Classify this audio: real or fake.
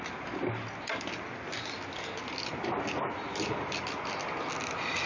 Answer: real